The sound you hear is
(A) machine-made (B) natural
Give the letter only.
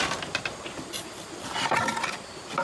B